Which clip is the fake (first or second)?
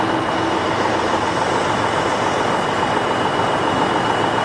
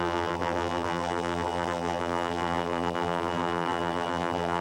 second